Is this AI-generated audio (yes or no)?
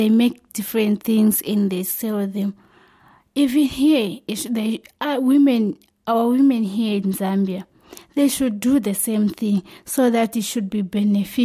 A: no